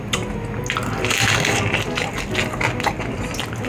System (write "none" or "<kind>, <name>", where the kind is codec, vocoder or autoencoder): none